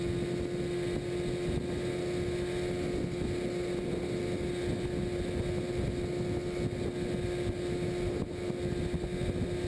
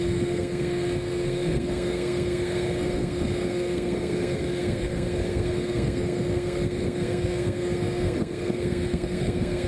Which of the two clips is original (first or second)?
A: first